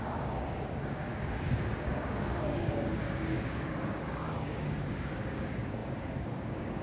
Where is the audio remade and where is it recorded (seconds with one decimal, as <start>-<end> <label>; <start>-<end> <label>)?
0.0-6.8 remade